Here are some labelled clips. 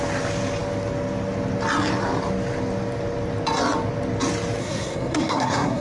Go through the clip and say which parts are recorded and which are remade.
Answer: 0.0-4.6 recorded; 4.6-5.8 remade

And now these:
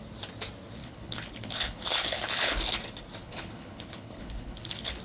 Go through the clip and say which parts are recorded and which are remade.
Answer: 0.0-0.8 recorded; 0.8-2.8 remade; 2.8-3.2 recorded; 3.2-5.0 remade

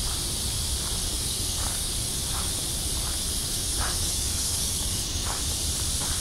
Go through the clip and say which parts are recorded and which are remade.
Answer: 0.0-1.1 recorded; 1.1-2.1 remade; 2.1-3.4 recorded; 3.4-5.4 remade; 5.4-6.2 recorded

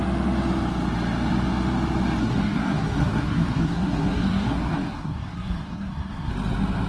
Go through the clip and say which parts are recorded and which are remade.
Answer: 0.0-2.2 recorded; 2.2-6.3 remade; 6.3-6.9 recorded

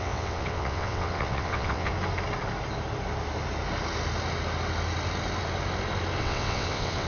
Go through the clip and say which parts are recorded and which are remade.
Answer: 0.0-1.9 remade; 1.9-6.2 recorded; 6.2-7.1 remade

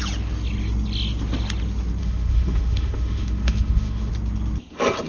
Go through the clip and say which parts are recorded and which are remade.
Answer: 0.0-2.0 recorded; 2.0-4.1 remade; 4.1-5.1 recorded

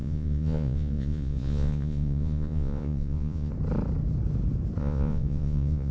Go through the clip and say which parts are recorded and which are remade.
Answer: 0.0-3.5 remade; 3.5-4.8 recorded; 4.8-5.9 remade

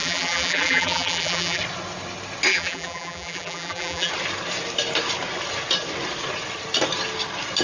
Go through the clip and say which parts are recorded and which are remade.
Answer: 0.0-1.6 remade; 1.6-2.5 recorded; 2.5-4.1 remade; 4.1-7.6 recorded